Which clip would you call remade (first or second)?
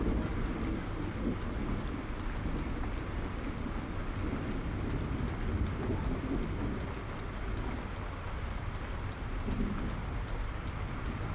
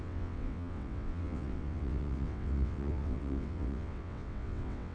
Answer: second